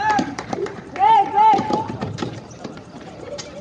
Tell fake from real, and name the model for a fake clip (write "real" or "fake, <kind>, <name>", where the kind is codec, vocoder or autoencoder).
fake, vocoder, BigVGAN v2